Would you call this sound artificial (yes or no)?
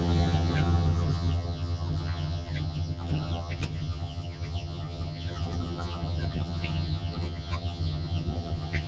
yes